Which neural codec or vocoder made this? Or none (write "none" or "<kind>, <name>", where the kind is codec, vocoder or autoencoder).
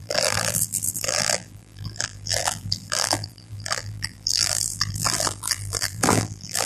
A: vocoder, BigVGAN v2